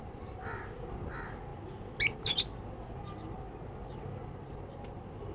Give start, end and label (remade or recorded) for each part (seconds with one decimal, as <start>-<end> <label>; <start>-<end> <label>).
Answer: 0.0-5.3 recorded